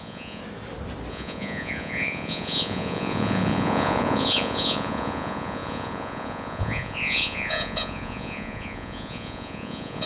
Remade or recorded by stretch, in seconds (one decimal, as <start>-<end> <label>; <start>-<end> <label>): 0.0-0.4 remade; 0.4-1.1 recorded; 1.1-10.1 remade